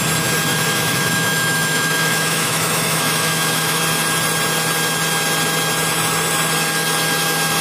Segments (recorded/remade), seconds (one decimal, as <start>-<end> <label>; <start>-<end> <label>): 0.0-0.5 recorded; 0.5-3.8 remade; 3.8-7.6 recorded